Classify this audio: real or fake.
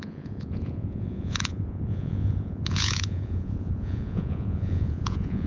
fake